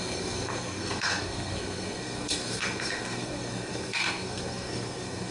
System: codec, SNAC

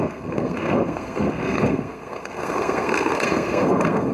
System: codec, SNAC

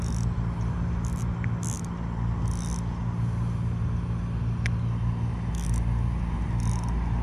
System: none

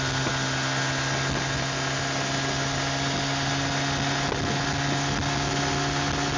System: none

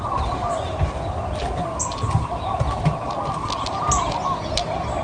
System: none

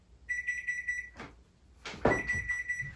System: none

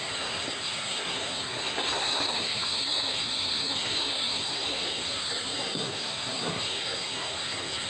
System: codec, SNAC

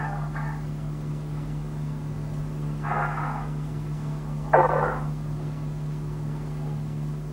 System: codec, SNAC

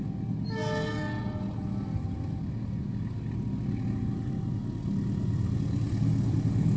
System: none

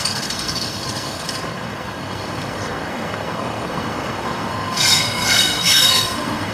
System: codec, SNAC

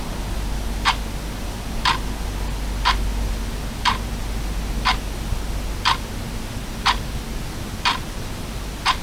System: none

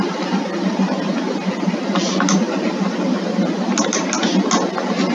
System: none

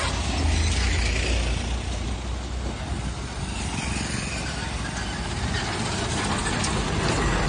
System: none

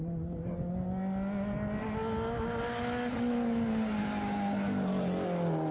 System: none